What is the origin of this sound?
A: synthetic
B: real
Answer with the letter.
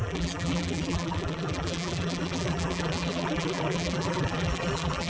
A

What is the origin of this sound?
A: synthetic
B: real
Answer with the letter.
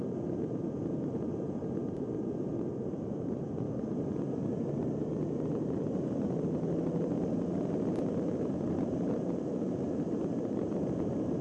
A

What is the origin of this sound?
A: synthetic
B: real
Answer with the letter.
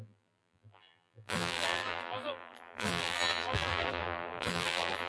A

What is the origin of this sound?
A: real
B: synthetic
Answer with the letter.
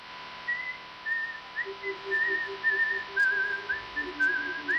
A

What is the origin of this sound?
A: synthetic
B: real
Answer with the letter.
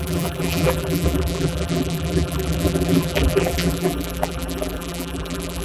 A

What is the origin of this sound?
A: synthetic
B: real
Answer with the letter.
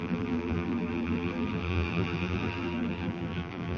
A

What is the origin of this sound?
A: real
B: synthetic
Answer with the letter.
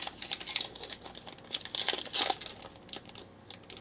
A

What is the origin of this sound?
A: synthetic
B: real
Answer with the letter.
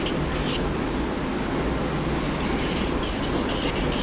B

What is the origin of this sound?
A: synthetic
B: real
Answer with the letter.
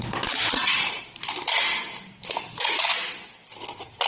A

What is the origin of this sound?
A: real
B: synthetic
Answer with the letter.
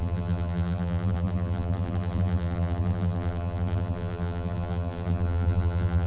B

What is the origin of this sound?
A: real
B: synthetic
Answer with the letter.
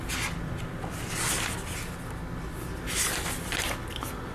A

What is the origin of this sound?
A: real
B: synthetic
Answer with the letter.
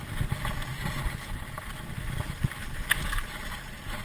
A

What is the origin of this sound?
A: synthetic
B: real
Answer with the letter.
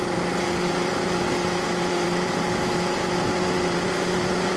A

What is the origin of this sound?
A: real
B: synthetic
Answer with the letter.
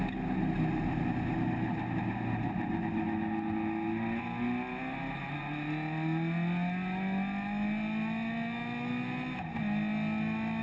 A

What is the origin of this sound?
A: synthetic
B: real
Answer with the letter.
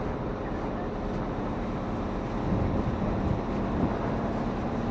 B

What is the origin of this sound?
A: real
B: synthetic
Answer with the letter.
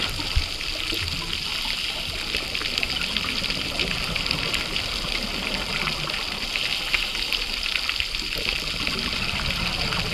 A